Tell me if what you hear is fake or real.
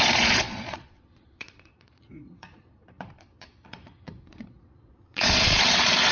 fake